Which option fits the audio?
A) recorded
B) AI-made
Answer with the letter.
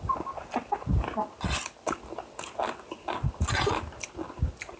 A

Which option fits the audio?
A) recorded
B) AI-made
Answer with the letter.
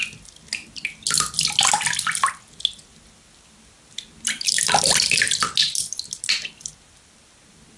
A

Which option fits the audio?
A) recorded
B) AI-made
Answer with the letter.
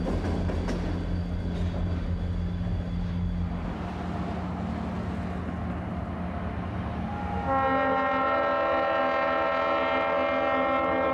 A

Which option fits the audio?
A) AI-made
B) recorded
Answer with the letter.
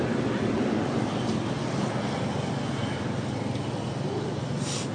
B